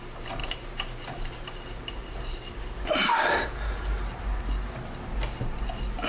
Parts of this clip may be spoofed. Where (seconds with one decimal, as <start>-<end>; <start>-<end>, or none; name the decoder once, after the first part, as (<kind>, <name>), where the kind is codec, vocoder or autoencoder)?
0.4-4.1 (vocoder, BigVGAN v2)